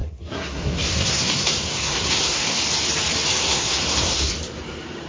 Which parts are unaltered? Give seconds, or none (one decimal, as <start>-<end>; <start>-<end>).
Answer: 2.6-3.4; 4.3-5.1